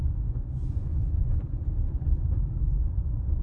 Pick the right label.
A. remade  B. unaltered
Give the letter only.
A